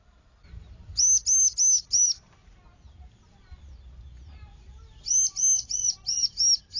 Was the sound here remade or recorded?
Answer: recorded